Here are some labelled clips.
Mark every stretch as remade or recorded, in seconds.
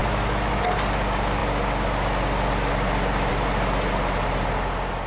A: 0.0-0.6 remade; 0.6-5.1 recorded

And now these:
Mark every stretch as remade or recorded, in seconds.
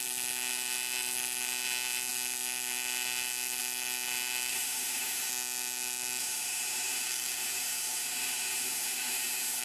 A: 0.0-4.5 recorded; 4.5-5.3 remade; 5.3-6.2 recorded; 6.2-9.6 remade